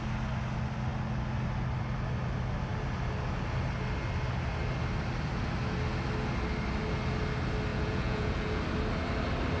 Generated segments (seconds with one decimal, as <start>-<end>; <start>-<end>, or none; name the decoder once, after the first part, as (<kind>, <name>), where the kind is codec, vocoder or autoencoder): 7.7-8.6 (vocoder, Vocos)